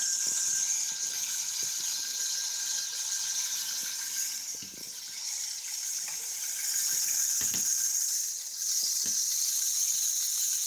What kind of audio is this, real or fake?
real